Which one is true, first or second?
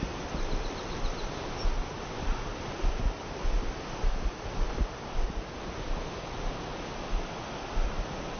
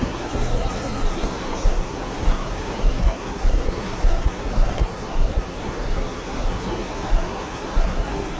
first